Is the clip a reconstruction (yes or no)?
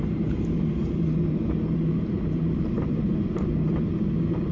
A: yes